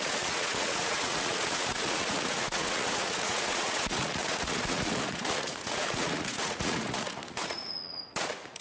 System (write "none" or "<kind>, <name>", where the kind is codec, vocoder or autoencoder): vocoder, Vocos